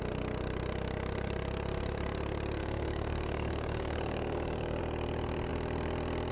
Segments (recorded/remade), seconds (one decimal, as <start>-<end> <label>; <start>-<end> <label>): 0.0-2.6 recorded; 2.6-4.8 remade; 4.8-6.3 recorded